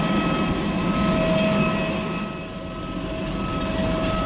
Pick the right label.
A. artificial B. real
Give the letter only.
B